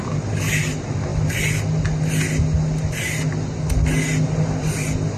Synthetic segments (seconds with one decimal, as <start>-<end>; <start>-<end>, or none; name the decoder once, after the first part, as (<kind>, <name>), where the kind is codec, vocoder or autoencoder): none